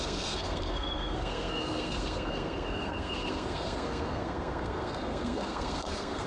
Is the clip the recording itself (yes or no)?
no